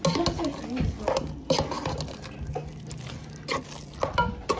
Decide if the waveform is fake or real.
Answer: real